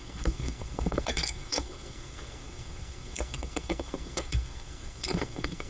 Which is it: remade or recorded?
remade